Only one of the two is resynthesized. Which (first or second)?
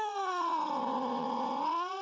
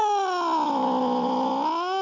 first